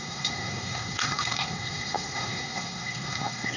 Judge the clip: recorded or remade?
remade